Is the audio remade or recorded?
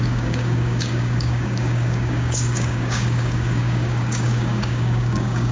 remade